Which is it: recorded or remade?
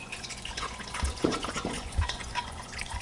remade